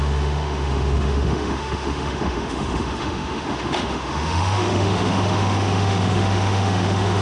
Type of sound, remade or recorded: remade